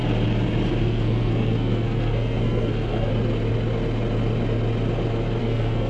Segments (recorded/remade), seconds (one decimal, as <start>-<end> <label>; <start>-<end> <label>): 0.0-0.8 recorded; 0.8-3.1 remade; 3.1-5.4 recorded; 5.4-5.9 remade

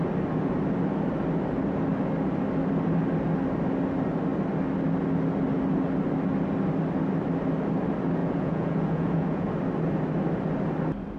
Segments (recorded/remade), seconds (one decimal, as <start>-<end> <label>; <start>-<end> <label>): 0.0-8.2 recorded; 8.2-9.5 remade; 9.5-11.2 recorded

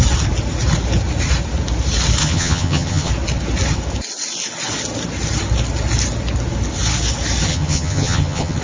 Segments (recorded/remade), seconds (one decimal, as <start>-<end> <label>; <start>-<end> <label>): 0.0-2.2 recorded; 2.2-3.1 remade; 3.1-7.5 recorded; 7.5-8.6 remade

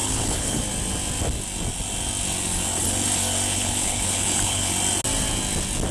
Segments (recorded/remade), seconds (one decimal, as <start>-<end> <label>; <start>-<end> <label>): 0.0-0.6 remade; 0.6-3.5 recorded; 3.5-4.7 remade; 4.7-5.9 recorded

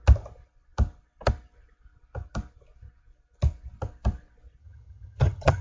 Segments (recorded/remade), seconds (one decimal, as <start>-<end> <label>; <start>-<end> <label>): 0.0-4.6 recorded; 4.6-5.6 remade

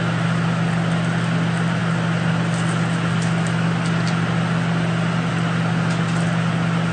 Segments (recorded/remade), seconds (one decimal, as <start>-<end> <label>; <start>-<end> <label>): 0.0-6.9 recorded